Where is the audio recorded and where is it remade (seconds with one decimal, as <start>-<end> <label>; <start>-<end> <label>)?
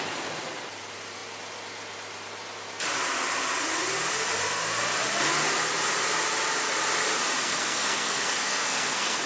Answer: 0.0-7.4 recorded; 7.4-9.3 remade